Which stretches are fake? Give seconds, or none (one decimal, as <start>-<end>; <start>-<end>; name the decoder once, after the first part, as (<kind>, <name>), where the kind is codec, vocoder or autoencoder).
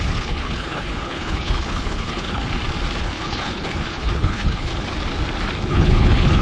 0.0-2.4 (codec, HILCodec); 3.0-4.7; 5.7-6.4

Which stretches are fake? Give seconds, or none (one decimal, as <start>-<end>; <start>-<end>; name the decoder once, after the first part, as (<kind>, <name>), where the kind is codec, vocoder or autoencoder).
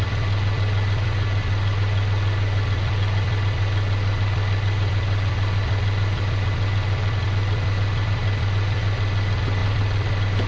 0.0-10.5 (vocoder, BigVGAN v2)